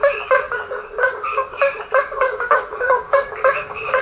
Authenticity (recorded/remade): remade